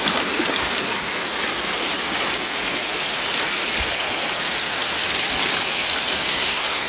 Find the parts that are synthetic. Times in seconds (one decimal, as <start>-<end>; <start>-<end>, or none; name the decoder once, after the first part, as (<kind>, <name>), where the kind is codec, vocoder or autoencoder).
6.3-6.9 (codec, SNAC)